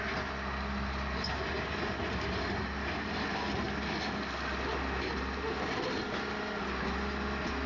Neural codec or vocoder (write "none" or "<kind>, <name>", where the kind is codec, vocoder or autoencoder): none